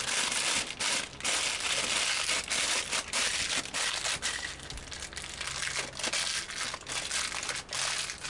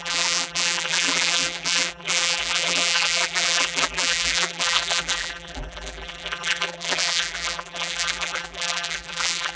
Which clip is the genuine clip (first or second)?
first